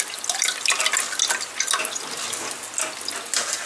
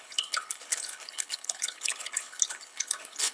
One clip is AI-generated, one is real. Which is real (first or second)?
first